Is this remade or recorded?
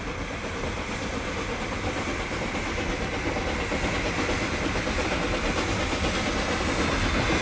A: recorded